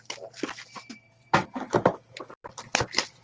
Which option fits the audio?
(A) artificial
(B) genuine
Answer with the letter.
A